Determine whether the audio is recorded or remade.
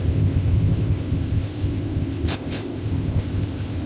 remade